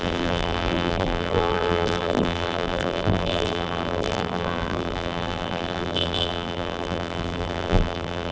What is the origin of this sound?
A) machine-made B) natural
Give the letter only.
A